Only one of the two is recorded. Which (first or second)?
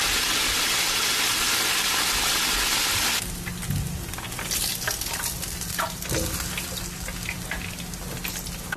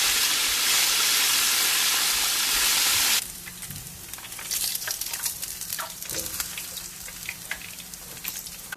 first